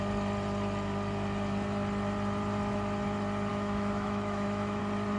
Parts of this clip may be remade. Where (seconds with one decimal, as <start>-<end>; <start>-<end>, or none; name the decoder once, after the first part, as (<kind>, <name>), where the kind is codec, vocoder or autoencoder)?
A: 3.5-4.8 (autoencoder, DAC-VAE)